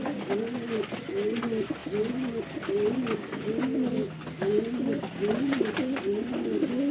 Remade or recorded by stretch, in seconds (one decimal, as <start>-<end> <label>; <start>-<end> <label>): 0.0-6.9 recorded